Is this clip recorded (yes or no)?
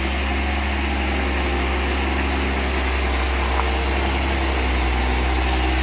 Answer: yes